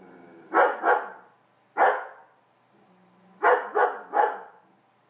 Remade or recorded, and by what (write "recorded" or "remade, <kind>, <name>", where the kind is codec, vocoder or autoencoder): recorded